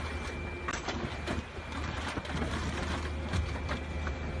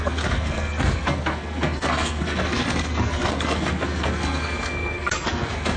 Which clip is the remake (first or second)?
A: second